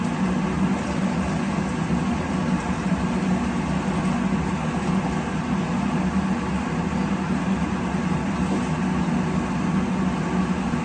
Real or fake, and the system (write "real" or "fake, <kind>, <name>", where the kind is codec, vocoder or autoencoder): real